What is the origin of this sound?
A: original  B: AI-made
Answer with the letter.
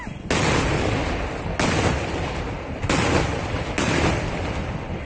A